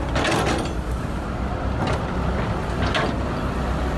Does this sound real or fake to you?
real